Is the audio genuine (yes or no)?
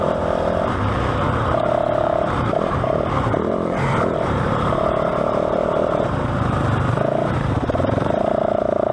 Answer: no